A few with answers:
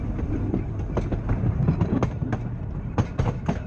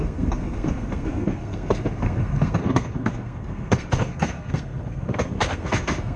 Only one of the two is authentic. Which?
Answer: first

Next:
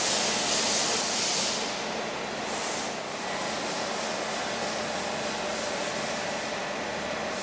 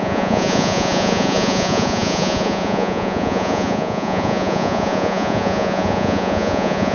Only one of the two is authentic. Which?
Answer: first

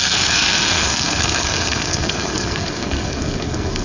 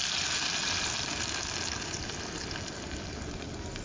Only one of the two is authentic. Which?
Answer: second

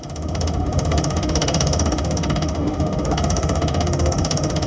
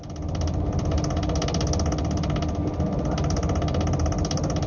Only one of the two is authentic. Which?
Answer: second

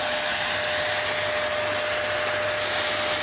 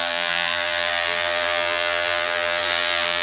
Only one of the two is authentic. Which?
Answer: first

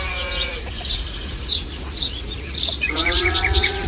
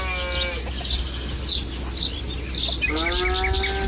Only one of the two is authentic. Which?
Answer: second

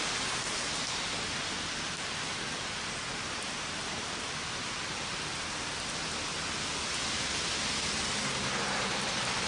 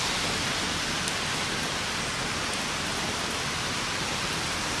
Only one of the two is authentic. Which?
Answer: first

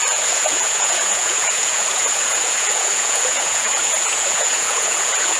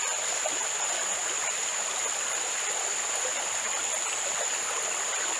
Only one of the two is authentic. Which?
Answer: second